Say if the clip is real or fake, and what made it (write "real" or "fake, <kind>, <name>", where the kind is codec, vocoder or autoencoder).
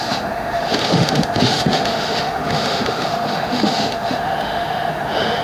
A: fake, autoencoder, DAC-VAE